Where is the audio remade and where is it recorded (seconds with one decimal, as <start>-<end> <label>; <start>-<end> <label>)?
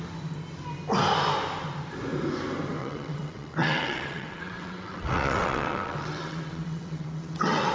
0.0-2.8 recorded; 2.8-7.7 remade